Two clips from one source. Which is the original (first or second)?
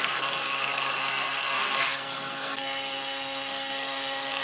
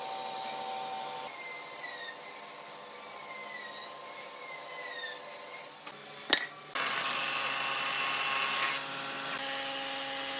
second